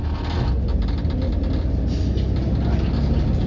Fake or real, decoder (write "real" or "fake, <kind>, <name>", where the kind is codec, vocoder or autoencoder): real